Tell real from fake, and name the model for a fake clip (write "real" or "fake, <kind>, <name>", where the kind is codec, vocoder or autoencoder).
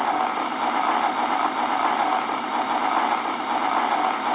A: real